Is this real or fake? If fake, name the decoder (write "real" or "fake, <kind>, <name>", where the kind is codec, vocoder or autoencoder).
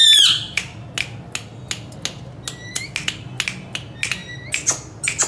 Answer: real